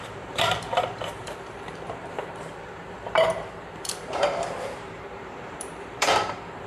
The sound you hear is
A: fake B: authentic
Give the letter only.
A